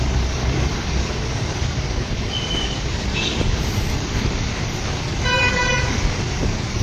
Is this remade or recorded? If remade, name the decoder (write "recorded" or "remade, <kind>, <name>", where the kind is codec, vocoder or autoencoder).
remade, codec, DAC